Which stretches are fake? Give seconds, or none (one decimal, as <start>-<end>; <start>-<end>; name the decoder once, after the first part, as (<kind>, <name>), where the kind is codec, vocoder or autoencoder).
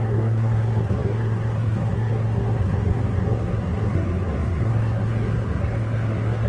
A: 0.0-6.5 (codec, SNAC)